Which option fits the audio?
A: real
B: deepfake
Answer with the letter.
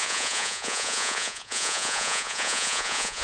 B